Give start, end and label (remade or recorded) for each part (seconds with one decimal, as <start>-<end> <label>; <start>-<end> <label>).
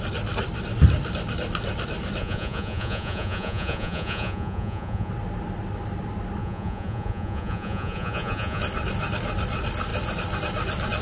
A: 0.0-2.2 recorded; 2.2-5.1 remade; 5.1-6.4 recorded; 6.4-8.6 remade; 8.6-11.0 recorded